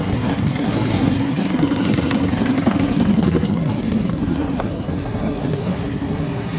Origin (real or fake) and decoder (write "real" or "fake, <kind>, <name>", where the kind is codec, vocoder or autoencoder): fake, codec, SNAC